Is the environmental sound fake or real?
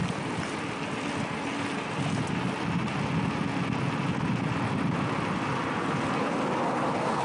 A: real